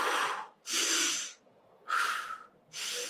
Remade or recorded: recorded